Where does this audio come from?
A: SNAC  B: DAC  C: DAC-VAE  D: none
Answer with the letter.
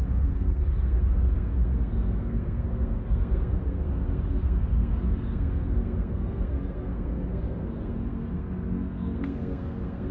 A